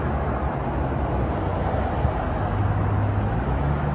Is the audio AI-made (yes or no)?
no